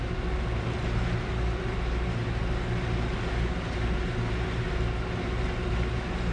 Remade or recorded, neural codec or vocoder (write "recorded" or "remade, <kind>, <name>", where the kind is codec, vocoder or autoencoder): recorded